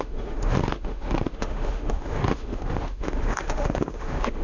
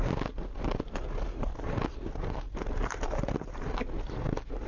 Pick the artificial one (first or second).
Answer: first